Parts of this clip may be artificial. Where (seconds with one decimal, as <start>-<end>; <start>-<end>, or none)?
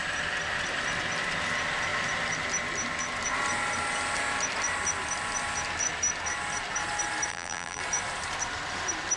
7.3-7.8